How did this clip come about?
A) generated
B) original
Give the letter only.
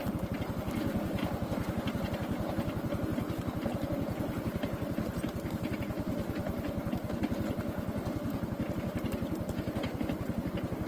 B